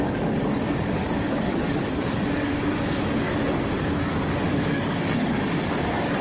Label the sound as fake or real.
fake